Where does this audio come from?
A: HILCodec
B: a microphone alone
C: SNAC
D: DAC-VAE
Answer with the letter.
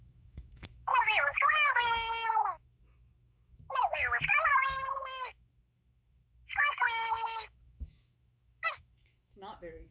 D